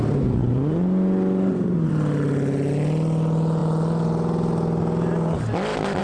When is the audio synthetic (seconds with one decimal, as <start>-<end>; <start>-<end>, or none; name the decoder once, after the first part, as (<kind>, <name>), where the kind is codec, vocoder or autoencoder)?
0.4-1.9 (vocoder, Vocos)